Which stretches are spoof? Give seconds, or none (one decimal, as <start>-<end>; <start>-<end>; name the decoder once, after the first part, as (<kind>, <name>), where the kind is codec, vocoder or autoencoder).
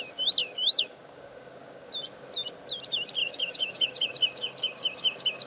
0.4-1.9 (codec, DAC); 3.2-5.5